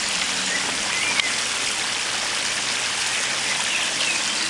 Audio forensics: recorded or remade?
recorded